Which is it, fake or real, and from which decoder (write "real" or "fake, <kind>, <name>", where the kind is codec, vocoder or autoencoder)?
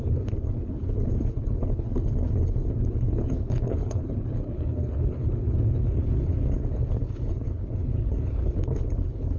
fake, codec, HILCodec